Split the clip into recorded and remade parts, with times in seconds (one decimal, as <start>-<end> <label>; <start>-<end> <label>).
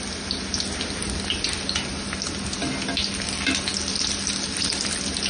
0.0-5.3 recorded